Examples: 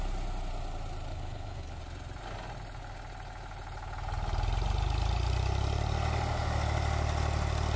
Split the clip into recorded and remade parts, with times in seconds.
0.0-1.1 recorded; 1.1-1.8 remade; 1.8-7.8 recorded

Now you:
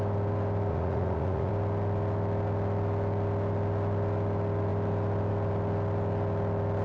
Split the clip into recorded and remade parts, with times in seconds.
0.0-0.7 recorded; 0.7-1.5 remade; 1.5-6.8 recorded